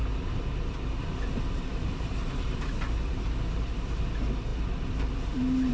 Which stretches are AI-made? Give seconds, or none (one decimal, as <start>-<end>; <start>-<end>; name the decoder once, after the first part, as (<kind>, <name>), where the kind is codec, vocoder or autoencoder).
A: 0.0-1.3 (vocoder, BigVGAN v2); 2.2-4.0